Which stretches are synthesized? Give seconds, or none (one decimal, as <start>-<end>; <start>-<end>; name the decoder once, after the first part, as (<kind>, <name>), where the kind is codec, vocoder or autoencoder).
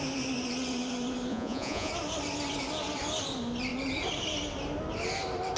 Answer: 1.3-1.9 (vocoder, Vocos)